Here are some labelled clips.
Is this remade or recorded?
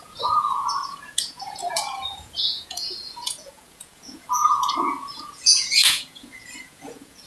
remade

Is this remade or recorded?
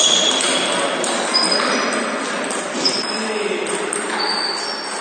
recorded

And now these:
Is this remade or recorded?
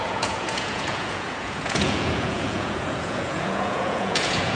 remade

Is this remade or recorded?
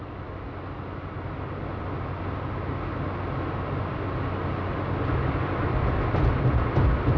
recorded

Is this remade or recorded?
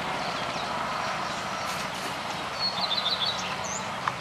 recorded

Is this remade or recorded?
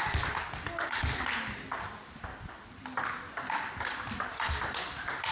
recorded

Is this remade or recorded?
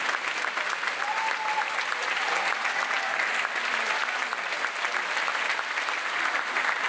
recorded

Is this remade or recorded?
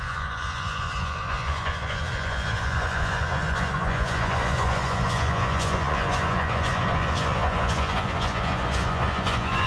remade